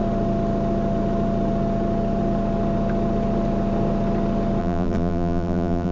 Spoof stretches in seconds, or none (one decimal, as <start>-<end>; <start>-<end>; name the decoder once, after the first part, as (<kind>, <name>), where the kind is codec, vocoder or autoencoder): 4.6-5.9 (vocoder, BigVGAN v2)